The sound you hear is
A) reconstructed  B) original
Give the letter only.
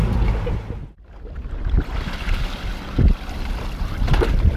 B